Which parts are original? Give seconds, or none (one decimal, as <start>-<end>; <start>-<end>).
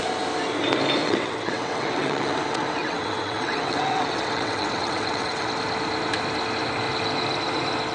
0.0-1.0; 5.5-7.9